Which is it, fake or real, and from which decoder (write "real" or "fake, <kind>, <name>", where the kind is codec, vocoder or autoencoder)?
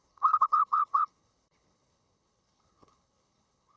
fake, codec, HILCodec